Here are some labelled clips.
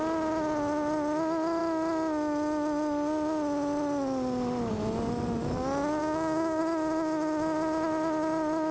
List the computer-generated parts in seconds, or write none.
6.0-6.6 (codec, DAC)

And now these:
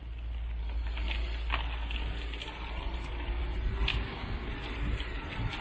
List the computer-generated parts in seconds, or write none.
3.9-4.5 (codec, DAC)